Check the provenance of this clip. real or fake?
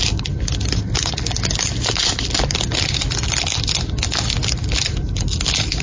real